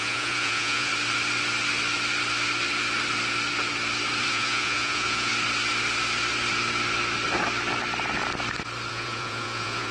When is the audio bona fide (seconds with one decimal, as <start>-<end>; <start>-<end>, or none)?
0.9-4.3; 5.3-8.9